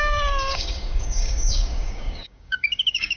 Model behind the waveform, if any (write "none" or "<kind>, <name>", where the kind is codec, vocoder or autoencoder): codec, DAC